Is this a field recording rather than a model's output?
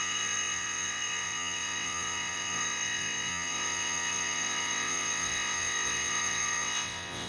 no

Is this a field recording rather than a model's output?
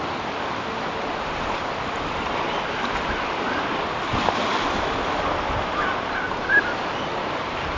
yes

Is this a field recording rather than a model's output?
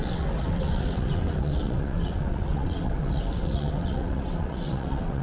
no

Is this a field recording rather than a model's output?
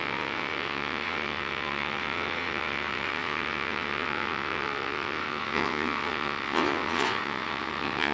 no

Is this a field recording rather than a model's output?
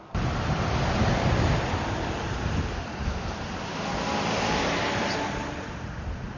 yes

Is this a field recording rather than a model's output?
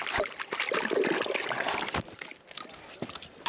yes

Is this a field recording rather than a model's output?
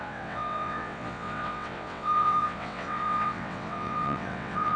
no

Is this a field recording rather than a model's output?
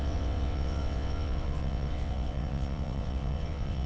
no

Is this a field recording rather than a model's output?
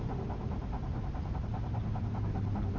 yes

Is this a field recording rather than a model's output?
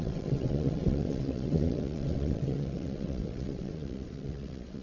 no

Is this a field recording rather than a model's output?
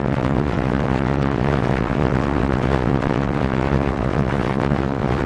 no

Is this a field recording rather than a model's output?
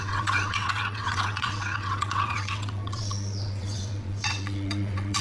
no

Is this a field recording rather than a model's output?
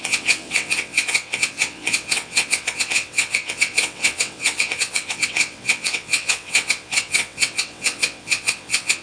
no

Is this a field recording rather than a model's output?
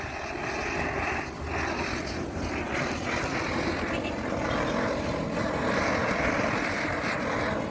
yes